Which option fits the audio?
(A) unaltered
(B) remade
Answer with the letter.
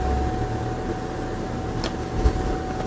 A